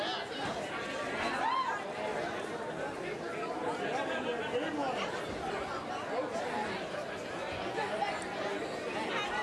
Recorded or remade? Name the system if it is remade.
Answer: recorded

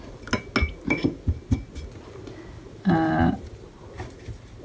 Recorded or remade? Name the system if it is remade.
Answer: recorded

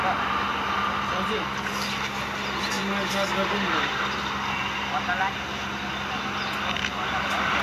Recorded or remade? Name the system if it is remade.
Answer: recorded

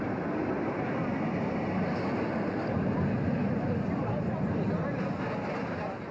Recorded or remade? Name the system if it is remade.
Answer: recorded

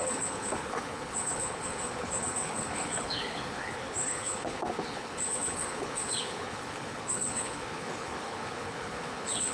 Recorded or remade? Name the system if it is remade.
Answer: remade, codec, HILCodec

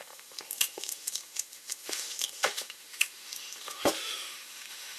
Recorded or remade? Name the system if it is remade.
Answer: remade, autoencoder, DAC-VAE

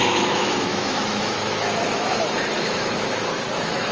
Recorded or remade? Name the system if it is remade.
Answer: remade, autoencoder, DAC-VAE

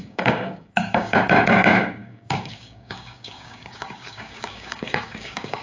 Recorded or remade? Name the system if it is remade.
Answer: remade, codec, DAC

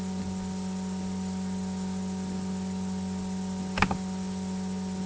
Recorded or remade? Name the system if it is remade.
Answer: recorded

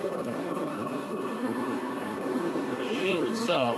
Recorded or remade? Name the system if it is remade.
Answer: remade, codec, SNAC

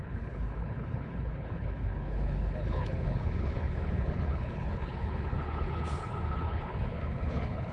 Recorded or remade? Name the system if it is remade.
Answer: remade, codec, HILCodec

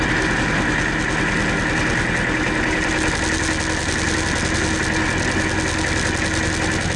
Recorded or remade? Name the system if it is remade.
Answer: recorded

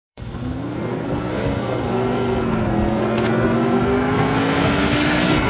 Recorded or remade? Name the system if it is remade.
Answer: remade, codec, SNAC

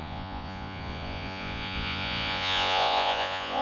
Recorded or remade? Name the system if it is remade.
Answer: remade, vocoder, Vocos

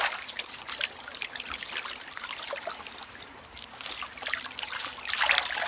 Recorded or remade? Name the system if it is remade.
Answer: remade, vocoder, BigVGAN v2